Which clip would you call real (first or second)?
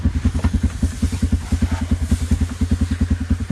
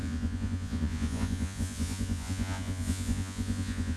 first